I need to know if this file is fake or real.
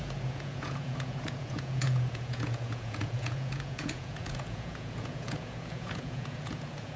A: fake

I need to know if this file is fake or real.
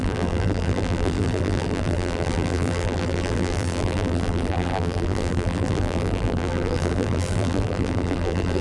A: fake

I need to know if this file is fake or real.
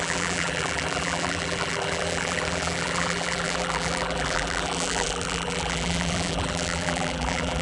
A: fake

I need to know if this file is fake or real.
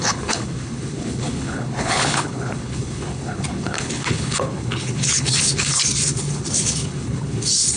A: fake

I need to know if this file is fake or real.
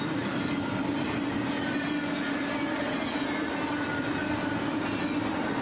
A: real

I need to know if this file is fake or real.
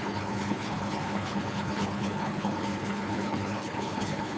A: fake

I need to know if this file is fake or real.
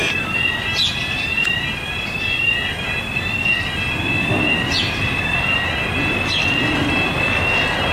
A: fake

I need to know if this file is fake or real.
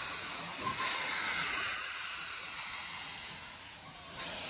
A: fake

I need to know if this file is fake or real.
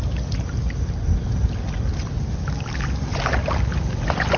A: real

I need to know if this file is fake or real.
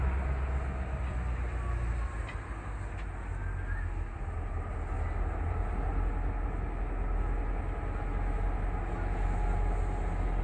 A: real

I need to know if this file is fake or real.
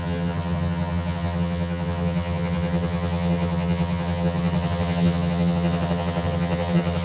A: fake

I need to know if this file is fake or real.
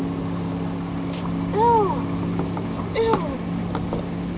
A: real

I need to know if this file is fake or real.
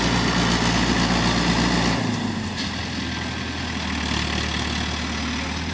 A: real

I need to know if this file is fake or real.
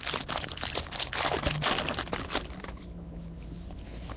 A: real